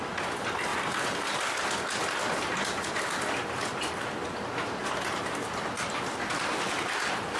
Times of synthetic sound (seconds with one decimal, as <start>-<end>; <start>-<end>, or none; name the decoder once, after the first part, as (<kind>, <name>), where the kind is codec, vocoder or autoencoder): 0.7-1.4 (vocoder, BigVGAN v2); 4.8-5.5